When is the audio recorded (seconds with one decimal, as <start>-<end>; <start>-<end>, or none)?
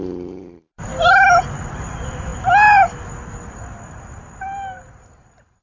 0.9-1.6; 2.3-3.5